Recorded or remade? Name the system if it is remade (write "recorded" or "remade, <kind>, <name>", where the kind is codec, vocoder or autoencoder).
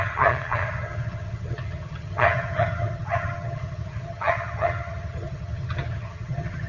remade, vocoder, HiFi-GAN